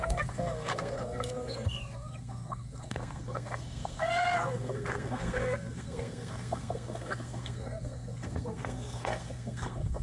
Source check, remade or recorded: remade